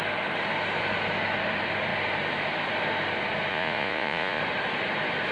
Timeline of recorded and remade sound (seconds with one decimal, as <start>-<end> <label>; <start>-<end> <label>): 0.0-3.5 recorded; 3.5-4.4 remade; 4.4-5.3 recorded